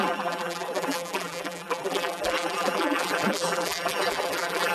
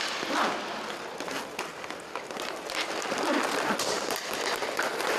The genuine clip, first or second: second